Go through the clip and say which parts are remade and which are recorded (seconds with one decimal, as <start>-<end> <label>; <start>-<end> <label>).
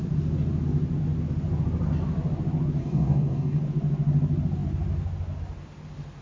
0.0-2.8 recorded; 2.8-3.6 remade; 3.6-6.2 recorded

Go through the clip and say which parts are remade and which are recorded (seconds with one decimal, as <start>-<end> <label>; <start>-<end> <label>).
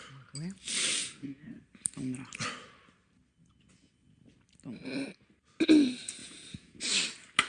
0.0-1.0 recorded; 1.0-1.6 remade; 1.6-6.2 recorded; 6.2-6.8 remade; 6.8-7.5 recorded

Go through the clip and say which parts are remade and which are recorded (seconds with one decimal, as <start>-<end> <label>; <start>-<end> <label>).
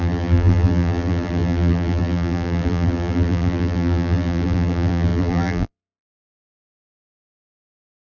0.0-8.0 remade